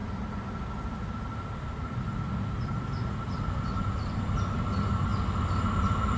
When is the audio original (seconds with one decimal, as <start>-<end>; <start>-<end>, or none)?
0.0-6.2